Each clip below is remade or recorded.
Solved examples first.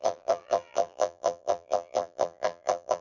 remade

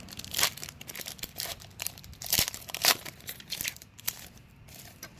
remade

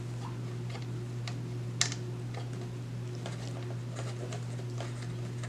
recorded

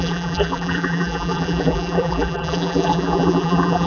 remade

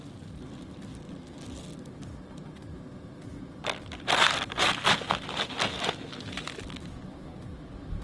recorded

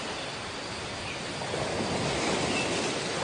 recorded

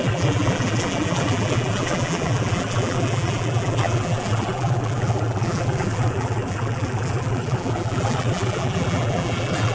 remade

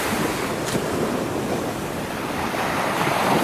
remade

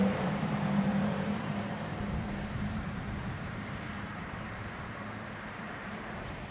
remade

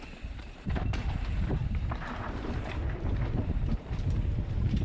remade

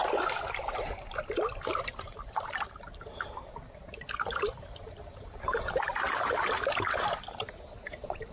remade